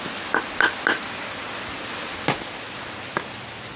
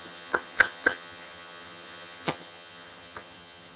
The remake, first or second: second